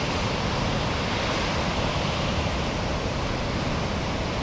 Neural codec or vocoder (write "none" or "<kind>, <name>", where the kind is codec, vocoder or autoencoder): none